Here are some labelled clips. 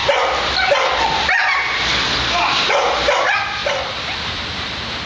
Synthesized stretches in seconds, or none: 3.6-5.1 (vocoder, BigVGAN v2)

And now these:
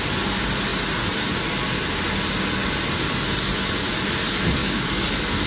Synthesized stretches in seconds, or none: 4.6-5.1 (codec, DAC)

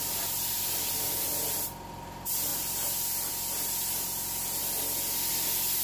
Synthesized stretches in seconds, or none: none

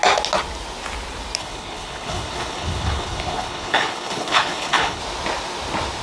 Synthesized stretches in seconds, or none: 1.4-5.0 (codec, HILCodec)